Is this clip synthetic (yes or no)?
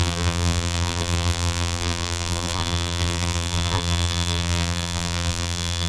yes